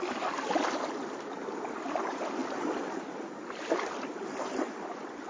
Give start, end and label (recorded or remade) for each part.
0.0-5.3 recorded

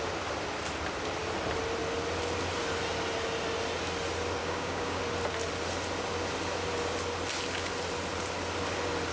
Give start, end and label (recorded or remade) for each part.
0.0-4.4 recorded; 4.4-5.0 remade; 5.0-9.1 recorded

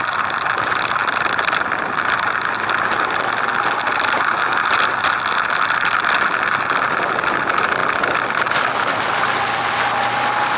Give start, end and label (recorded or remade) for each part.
0.0-10.6 recorded

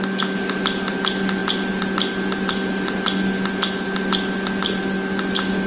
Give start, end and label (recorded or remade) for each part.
0.0-5.7 recorded

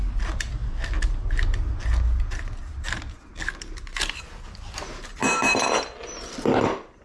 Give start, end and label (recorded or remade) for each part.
0.0-7.0 recorded